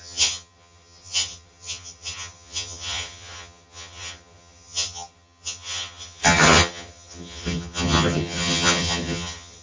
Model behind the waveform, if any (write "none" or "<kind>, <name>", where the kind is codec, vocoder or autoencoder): vocoder, HiFi-GAN